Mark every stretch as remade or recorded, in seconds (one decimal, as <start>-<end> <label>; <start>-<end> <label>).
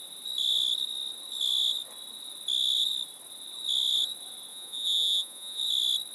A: 0.0-4.5 recorded; 4.5-5.6 remade; 5.6-6.1 recorded